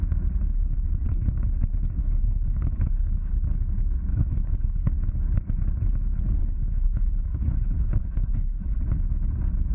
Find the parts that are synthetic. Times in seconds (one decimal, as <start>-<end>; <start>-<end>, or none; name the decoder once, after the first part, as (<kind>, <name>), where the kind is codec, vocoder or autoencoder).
2.0-3.3 (codec, HILCodec); 4.1-4.9; 6.4-8.8